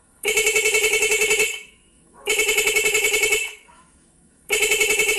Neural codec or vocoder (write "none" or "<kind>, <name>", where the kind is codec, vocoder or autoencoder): autoencoder, DAC-VAE